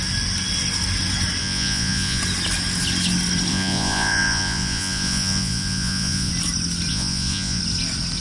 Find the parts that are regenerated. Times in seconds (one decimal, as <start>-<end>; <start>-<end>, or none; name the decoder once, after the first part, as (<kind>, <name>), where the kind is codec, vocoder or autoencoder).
1.4-2.2 (vocoder, Vocos); 3.5-6.3; 6.9-7.6